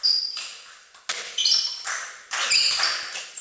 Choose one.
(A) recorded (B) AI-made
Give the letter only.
A